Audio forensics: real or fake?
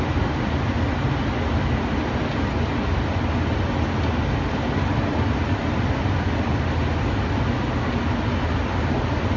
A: real